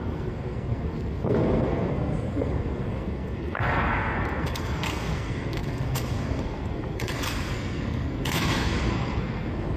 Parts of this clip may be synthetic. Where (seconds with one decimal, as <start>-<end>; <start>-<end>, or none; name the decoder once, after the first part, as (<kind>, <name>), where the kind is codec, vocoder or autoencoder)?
0.0-9.8 (codec, SNAC)